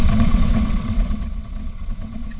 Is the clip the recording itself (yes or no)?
no